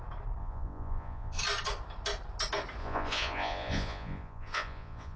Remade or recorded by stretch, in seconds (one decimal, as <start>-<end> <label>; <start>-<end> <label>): 0.0-0.4 recorded; 0.4-1.4 remade; 1.4-2.8 recorded; 2.8-5.2 remade